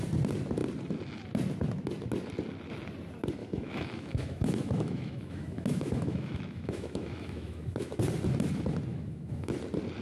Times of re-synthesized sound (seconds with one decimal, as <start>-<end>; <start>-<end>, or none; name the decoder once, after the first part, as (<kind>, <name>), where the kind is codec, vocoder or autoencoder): 3.4-8.0 (autoencoder, DAC-VAE); 8.9-9.5